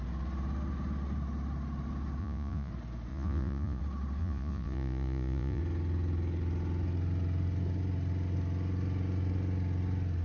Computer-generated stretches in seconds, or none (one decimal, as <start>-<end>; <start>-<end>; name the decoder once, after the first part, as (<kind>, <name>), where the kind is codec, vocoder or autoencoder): 2.2-2.7 (vocoder, Vocos); 3.1-3.8; 4.2-5.6